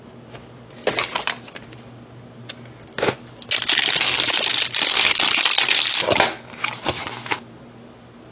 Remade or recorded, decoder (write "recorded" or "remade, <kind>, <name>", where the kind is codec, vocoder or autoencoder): recorded